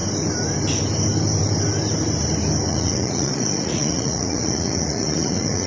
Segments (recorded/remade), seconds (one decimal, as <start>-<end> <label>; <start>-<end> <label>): 0.0-2.7 recorded; 2.7-5.7 remade